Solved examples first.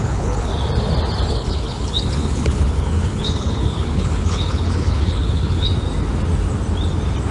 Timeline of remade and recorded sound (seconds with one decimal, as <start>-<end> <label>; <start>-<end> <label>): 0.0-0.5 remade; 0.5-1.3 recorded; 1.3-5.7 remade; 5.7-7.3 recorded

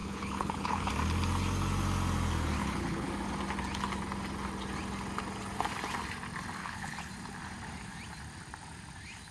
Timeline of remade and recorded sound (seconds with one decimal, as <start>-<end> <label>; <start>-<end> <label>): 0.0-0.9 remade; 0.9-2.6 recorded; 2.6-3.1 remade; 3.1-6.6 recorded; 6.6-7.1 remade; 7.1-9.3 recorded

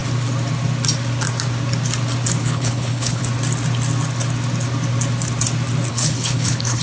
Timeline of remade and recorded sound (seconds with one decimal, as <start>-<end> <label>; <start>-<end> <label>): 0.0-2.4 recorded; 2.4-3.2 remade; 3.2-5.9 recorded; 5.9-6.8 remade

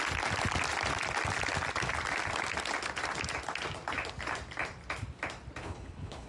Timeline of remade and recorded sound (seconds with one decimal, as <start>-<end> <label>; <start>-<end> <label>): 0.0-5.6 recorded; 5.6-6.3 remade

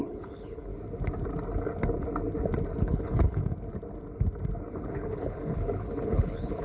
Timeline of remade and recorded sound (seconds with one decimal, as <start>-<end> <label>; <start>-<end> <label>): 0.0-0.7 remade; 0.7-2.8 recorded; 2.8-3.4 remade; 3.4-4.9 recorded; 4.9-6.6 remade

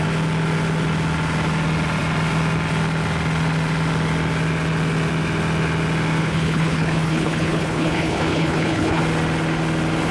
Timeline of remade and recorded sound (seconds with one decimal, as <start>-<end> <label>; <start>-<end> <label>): 0.0-6.2 recorded; 6.2-9.0 remade; 9.0-10.1 recorded

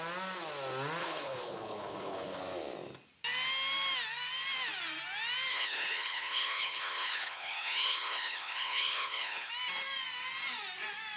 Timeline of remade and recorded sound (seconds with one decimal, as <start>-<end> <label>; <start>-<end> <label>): 0.0-1.0 recorded; 1.0-2.4 remade; 2.4-5.5 recorded; 5.5-9.5 remade; 9.5-11.2 recorded